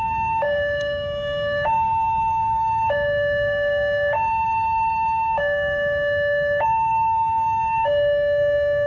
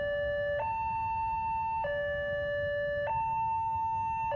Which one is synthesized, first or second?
first